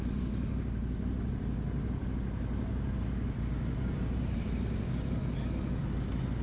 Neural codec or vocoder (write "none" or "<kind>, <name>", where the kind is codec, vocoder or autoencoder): none